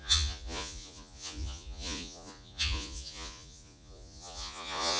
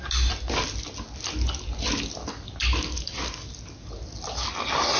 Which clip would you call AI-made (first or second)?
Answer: first